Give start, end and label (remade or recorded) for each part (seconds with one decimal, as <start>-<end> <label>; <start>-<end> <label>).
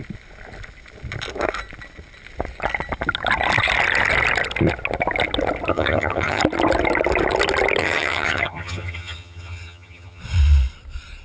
0.0-5.7 recorded; 5.7-6.4 remade; 6.4-7.8 recorded; 7.8-10.2 remade; 10.2-11.2 recorded